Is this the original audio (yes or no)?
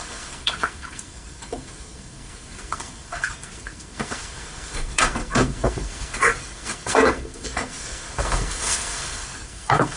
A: no